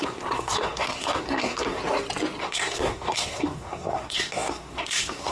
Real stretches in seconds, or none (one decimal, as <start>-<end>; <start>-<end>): 1.8-2.4